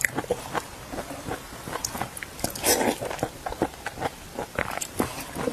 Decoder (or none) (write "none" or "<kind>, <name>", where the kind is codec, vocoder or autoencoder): none